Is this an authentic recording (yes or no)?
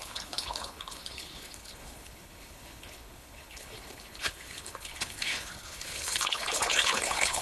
no